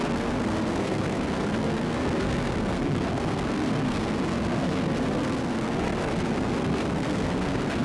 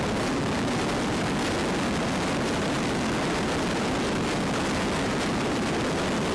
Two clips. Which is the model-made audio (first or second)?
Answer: first